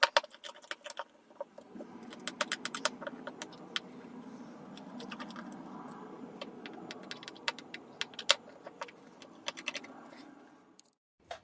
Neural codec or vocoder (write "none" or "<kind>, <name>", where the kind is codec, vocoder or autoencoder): none